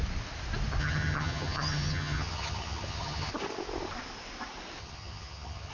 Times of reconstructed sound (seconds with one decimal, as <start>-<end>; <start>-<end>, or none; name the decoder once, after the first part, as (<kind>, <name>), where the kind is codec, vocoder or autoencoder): 0.8-3.3 (vocoder, HiFi-GAN); 4.8-5.7